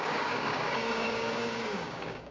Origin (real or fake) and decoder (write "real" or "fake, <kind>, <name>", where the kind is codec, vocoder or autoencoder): fake, codec, DAC